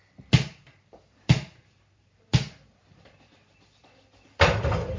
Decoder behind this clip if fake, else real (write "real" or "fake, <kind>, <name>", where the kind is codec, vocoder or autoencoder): real